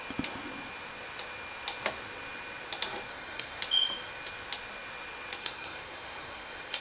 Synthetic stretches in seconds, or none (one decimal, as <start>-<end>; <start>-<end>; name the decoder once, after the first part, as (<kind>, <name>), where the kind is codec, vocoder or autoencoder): 3.1-3.6 (codec, SNAC); 5.4-6.8